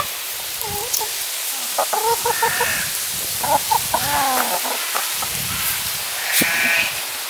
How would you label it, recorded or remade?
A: recorded